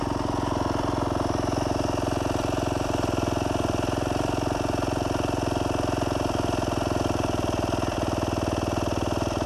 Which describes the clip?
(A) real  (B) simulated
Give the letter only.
A